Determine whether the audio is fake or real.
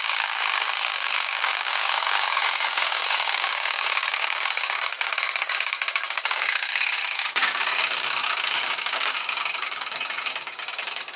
fake